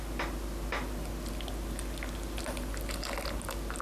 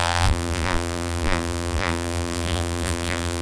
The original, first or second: first